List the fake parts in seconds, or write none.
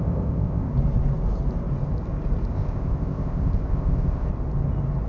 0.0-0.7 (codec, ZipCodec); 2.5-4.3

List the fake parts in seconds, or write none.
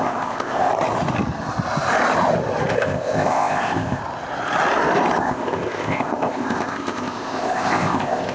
0.0-0.7 (codec, ZipCodec); 2.7-4.0; 5.2-8.3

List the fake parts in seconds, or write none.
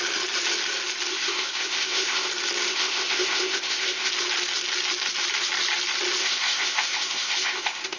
1.1-2.3 (codec, ZipCodec); 2.7-4.1; 6.2-8.0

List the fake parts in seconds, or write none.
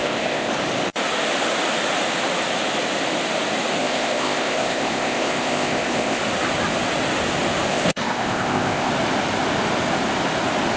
0.0-0.5 (codec, ZipCodec); 3.8-6.2; 7.7-8.9